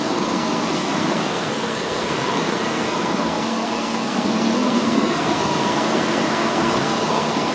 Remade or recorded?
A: remade